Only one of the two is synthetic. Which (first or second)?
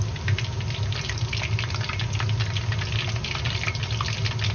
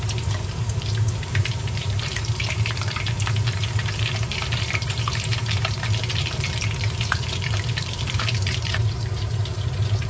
second